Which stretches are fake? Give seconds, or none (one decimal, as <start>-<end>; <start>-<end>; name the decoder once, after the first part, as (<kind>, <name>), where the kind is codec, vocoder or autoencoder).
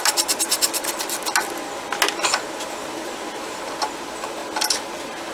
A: none